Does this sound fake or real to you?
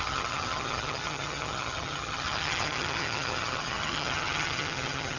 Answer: fake